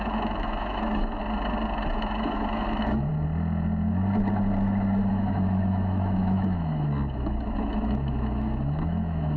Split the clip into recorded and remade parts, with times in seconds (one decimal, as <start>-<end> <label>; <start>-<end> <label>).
0.0-1.2 remade; 1.2-1.9 recorded; 1.9-3.1 remade; 3.1-5.1 recorded; 5.1-9.4 remade

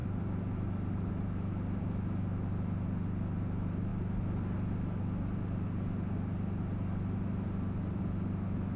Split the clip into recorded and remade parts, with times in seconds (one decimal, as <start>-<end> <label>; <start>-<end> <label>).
0.0-8.8 recorded

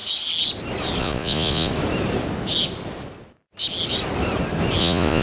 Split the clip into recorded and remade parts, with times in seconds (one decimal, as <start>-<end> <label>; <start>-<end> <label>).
0.0-1.0 recorded; 1.0-1.7 remade; 1.7-4.8 recorded; 4.8-5.2 remade

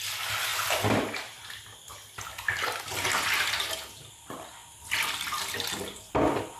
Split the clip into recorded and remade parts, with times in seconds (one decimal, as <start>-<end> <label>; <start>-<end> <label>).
0.0-6.6 recorded